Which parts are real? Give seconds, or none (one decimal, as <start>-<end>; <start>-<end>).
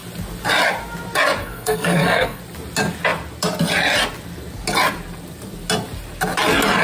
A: 0.0-1.4; 2.4-6.8